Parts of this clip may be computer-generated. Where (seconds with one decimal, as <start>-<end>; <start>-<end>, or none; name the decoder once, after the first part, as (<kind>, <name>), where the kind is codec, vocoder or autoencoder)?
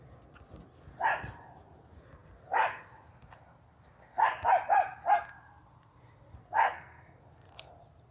6.4-7.2 (codec, SNAC)